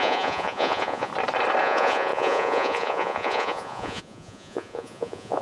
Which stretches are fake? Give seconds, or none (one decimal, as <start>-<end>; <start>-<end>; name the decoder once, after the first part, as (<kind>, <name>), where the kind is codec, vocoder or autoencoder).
0.0-1.1 (vocoder, Vocos); 1.6-5.4